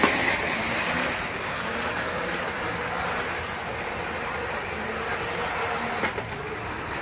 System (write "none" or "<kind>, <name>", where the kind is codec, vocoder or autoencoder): none